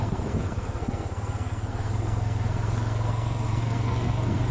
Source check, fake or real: fake